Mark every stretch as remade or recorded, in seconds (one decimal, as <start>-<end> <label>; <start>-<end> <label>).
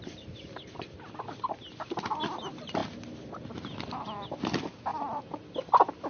0.0-6.1 recorded